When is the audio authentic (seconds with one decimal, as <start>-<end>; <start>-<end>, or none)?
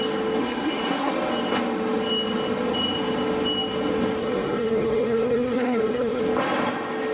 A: 0.0-0.4; 1.1-4.2; 6.2-7.1